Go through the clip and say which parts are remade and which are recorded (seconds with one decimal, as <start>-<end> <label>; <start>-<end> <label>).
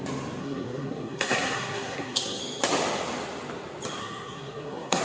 0.0-0.4 recorded; 0.4-2.4 remade; 2.4-4.0 recorded; 4.0-5.0 remade